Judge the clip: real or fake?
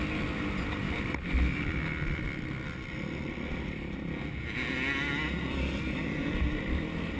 real